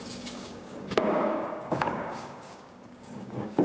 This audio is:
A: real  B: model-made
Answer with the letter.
B